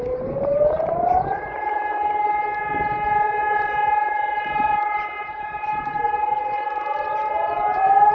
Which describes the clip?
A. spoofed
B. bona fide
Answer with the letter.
A